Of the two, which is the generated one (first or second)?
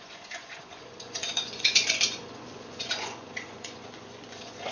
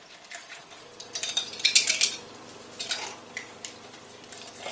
first